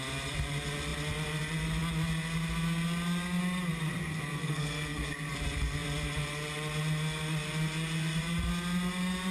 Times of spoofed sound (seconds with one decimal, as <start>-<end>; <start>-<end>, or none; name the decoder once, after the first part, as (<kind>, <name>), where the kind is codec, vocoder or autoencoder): 4.4-5.1 (codec, SNAC)